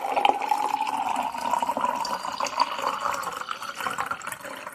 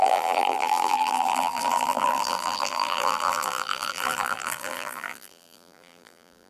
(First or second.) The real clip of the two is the first